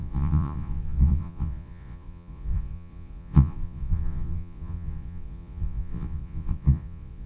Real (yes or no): no